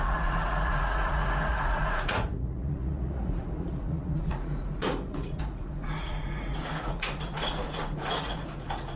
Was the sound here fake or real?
fake